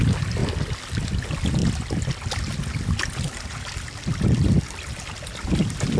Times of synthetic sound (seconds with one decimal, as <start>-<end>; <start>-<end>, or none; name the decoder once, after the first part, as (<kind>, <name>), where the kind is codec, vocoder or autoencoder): none